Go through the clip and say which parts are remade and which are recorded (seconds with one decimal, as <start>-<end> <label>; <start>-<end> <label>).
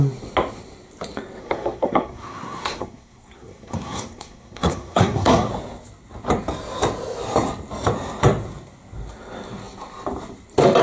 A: 0.0-1.4 recorded; 1.4-5.5 remade; 5.5-10.8 recorded